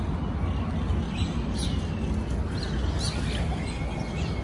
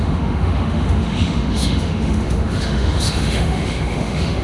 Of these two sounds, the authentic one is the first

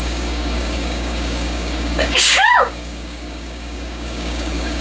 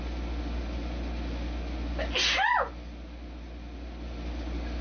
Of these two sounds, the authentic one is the second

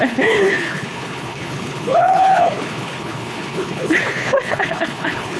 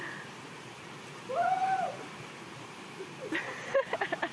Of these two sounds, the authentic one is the second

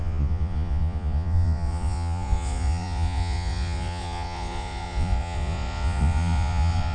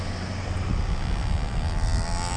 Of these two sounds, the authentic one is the second